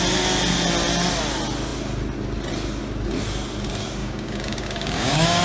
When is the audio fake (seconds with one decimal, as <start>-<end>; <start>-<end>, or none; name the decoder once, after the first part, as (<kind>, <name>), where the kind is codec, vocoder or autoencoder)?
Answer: 4.0-5.4 (codec, DAC)